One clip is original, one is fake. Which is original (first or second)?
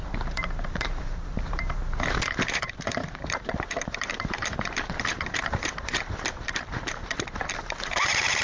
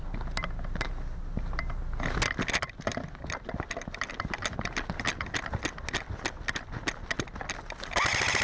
second